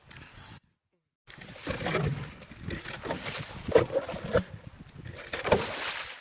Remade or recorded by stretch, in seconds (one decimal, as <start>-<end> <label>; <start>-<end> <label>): 0.0-6.2 recorded